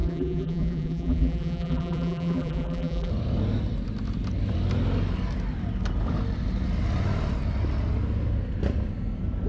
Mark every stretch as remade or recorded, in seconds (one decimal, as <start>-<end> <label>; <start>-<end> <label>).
0.0-3.1 remade; 3.1-9.5 recorded

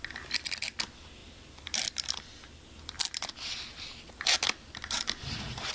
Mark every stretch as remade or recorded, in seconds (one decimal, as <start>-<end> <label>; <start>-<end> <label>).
0.0-5.7 recorded

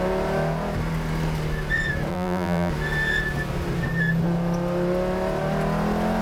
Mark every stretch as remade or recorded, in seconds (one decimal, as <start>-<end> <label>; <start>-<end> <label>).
0.0-2.1 recorded; 2.1-2.7 remade; 2.7-6.2 recorded

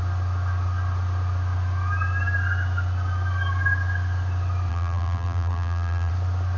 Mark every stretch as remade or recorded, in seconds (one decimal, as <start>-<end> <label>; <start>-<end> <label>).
0.0-4.7 recorded; 4.7-6.1 remade; 6.1-6.6 recorded